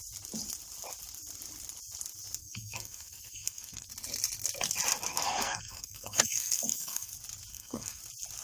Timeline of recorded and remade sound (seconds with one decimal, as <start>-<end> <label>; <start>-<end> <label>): 0.0-2.4 recorded; 2.4-3.9 remade; 3.9-5.1 recorded; 5.1-7.1 remade; 7.1-7.5 recorded; 7.5-8.0 remade; 8.0-8.4 recorded